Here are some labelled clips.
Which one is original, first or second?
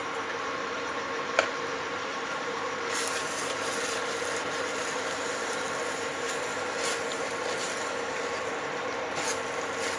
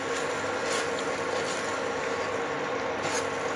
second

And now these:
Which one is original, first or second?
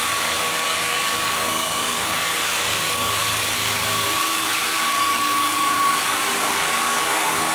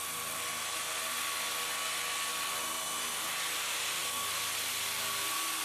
second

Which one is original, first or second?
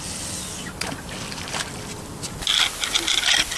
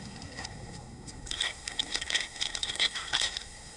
first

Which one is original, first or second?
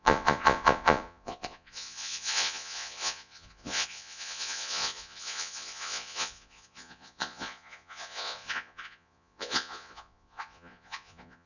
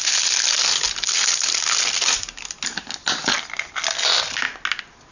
second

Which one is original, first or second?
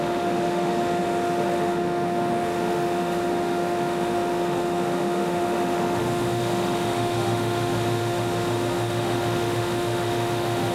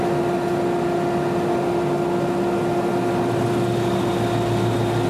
second